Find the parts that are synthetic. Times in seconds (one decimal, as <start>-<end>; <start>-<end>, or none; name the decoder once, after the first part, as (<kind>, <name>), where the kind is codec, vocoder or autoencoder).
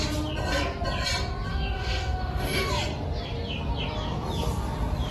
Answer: 1.5-2.7 (autoencoder, DAC-VAE)